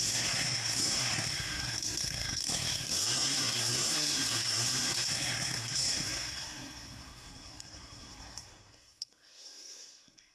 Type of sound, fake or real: fake